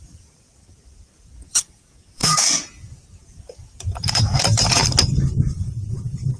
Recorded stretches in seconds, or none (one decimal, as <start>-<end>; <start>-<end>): 4.8-5.9